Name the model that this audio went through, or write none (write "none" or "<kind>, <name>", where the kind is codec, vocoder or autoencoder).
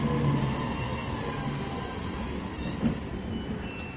none